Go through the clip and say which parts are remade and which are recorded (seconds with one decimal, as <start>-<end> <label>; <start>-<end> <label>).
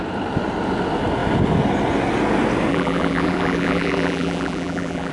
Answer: 0.0-2.7 recorded; 2.7-5.1 remade